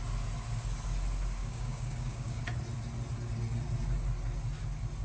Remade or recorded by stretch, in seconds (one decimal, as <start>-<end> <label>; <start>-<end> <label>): 0.0-1.4 recorded; 1.4-2.4 remade; 2.4-5.0 recorded